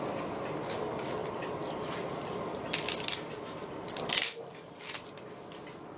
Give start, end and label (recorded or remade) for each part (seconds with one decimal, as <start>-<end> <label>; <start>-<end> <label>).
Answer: 0.0-6.0 recorded